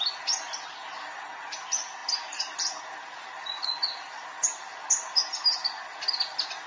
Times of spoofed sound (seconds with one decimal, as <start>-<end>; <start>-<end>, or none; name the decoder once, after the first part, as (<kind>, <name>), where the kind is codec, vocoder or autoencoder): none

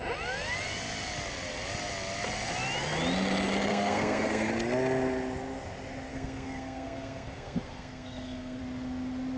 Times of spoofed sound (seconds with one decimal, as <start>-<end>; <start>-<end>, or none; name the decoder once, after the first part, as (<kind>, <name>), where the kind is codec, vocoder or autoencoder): 3.7-4.5 (codec, SNAC); 6.1-8.6

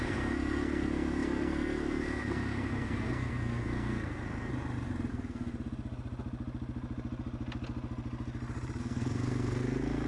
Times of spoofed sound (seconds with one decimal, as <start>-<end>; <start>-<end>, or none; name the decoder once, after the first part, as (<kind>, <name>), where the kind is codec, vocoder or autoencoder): 0.0-4.5 (codec, SNAC); 5.1-5.5; 8.8-10.1

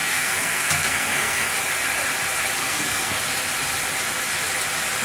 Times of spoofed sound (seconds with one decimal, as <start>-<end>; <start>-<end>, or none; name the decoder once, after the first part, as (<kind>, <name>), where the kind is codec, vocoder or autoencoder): 0.0-1.5 (codec, SNAC); 2.6-3.2

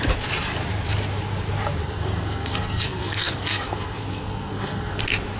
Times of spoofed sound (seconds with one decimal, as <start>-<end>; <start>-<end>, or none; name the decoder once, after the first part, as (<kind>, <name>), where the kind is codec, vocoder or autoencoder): 1.8-5.0 (codec, SNAC)